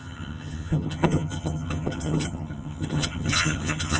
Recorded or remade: remade